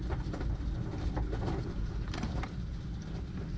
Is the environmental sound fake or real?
real